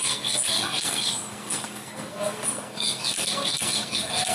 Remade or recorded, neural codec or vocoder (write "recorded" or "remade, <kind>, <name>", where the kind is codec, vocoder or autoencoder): remade, codec, SNAC